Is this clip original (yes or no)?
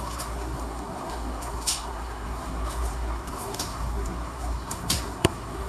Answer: no